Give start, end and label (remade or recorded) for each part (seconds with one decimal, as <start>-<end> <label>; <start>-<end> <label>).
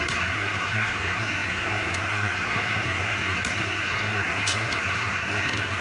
0.0-5.8 remade